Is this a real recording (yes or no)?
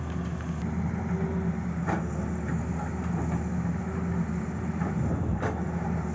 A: yes